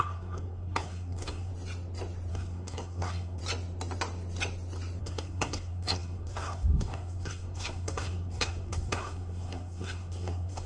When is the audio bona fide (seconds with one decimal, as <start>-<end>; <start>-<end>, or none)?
1.5-2.3; 3.4-5.0